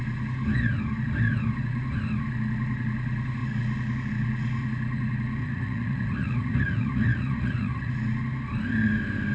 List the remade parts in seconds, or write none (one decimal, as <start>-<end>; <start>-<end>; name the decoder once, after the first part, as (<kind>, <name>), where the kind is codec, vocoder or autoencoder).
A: 5.4-7.9 (vocoder, Vocos)